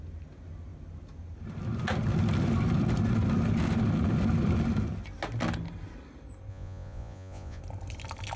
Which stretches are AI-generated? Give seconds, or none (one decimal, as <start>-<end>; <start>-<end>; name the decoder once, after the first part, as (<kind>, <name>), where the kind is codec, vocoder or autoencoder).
6.5-7.6 (vocoder, Vocos)